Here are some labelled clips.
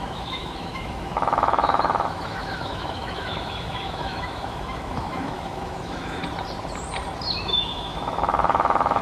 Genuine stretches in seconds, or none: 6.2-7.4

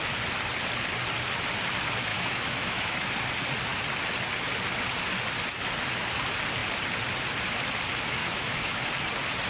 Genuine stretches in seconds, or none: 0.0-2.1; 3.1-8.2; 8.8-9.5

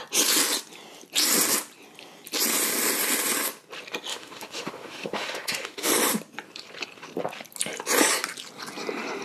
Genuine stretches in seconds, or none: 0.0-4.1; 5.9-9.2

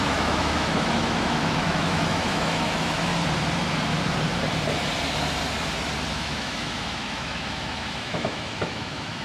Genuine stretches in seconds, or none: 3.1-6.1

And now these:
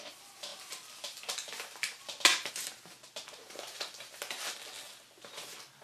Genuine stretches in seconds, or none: 0.0-5.8

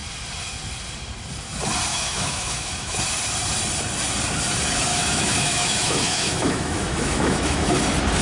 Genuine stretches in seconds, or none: 0.0-1.9; 3.0-4.9; 7.7-8.2